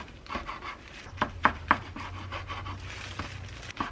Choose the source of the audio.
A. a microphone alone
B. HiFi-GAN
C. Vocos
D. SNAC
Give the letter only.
A